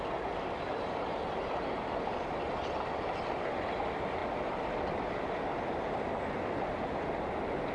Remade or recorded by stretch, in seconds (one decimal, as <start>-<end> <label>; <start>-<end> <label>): 0.0-7.7 recorded